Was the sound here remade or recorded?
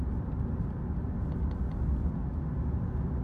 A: recorded